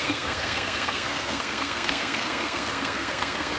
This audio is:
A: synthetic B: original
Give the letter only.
A